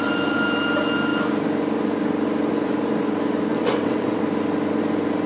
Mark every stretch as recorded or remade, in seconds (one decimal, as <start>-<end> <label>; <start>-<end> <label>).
0.0-3.5 recorded; 3.5-4.2 remade; 4.2-5.3 recorded